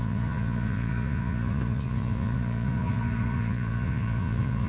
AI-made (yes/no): yes